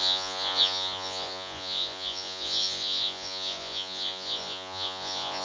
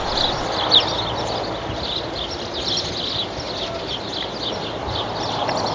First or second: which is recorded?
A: second